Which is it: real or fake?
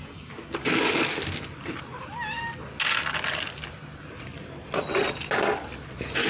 real